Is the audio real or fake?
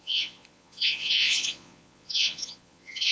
fake